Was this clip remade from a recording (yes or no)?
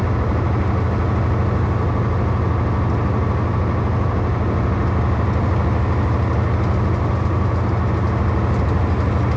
no